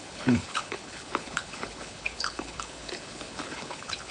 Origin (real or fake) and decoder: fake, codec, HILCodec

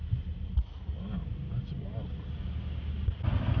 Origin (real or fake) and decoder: real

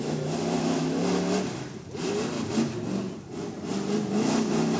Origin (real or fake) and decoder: real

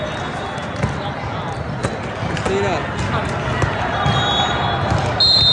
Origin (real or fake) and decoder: real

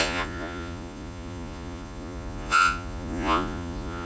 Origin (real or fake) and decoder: fake, vocoder, Vocos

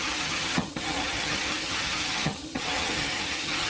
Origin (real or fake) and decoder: fake, vocoder, HiFi-GAN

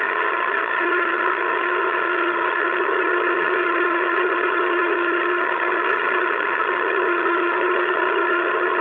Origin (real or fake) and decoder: fake, vocoder, HiFi-GAN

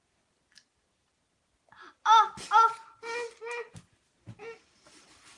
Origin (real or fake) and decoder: real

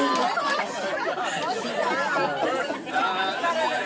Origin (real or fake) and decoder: real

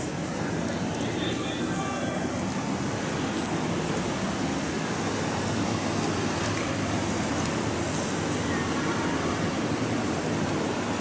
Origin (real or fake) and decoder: real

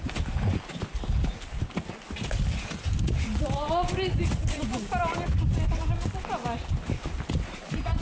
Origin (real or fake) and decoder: real